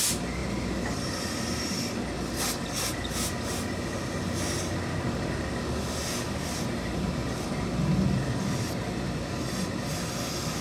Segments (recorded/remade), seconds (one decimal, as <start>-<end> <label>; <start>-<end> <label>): 0.0-10.6 recorded